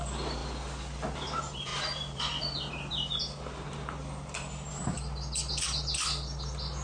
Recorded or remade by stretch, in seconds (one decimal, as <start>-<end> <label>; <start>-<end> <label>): 0.0-6.8 recorded